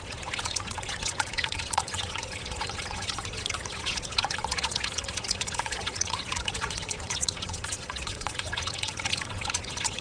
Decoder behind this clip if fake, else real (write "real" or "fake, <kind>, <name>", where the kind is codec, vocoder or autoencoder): fake, vocoder, Vocos